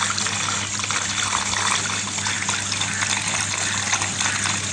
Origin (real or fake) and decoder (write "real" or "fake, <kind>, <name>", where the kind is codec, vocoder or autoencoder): real